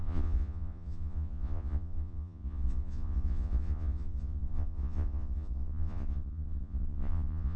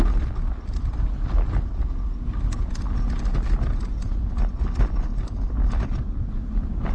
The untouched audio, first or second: second